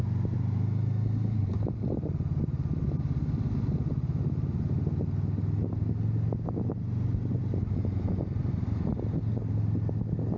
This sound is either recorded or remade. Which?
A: recorded